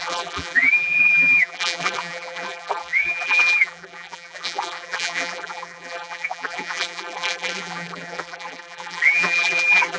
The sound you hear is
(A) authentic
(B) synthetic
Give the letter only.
B